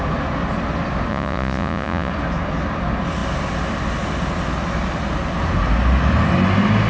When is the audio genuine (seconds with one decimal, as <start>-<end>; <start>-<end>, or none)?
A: 0.0-1.1; 2.1-6.9